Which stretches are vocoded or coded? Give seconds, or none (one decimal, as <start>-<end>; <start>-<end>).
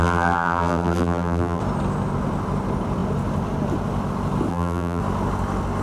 0.0-1.6; 4.5-5.0